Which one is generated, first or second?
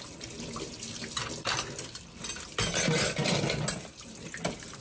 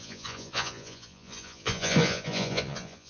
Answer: second